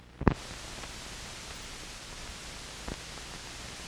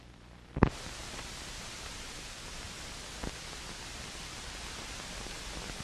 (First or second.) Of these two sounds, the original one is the first